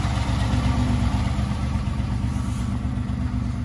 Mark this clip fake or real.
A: fake